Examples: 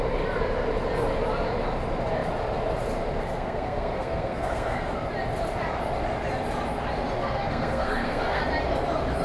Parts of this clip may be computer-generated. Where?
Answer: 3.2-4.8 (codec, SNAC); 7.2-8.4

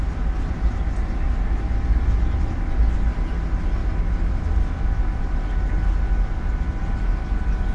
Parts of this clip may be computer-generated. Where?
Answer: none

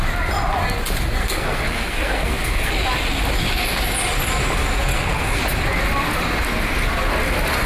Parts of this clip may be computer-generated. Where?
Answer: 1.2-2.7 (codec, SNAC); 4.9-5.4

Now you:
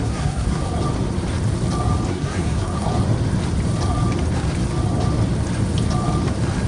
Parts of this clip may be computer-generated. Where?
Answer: 0.0-0.7 (codec, SNAC); 2.1-2.9

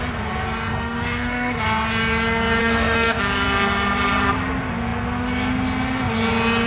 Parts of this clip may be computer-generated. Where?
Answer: 0.7-1.6 (codec, SNAC); 2.6-3.2

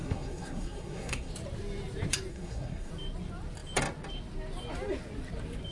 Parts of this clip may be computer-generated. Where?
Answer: 0.0-1.3 (codec, SNAC); 2.3-2.9

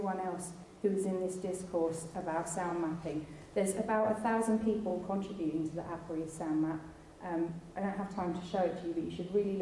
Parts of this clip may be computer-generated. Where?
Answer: none

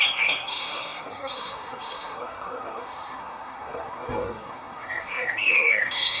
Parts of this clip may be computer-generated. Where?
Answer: 0.0-6.2 (codec, SNAC)